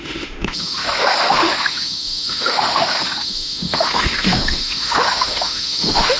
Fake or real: fake